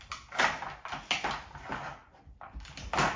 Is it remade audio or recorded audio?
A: recorded